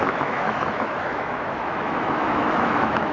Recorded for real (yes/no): no